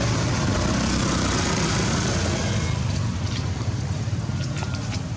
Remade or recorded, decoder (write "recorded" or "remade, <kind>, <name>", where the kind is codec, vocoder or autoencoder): recorded